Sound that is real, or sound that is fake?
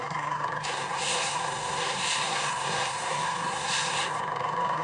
fake